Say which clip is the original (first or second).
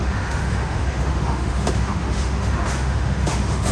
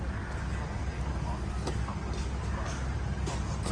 second